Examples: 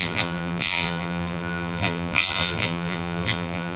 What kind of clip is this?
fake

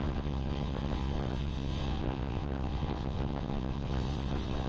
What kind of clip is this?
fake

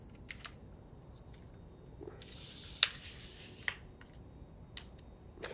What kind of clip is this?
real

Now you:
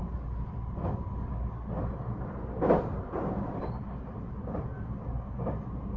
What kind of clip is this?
real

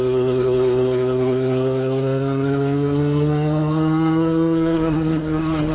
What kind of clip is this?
fake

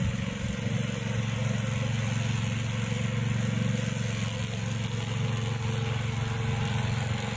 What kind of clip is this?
real